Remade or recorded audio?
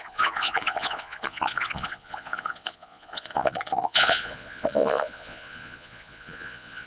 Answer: remade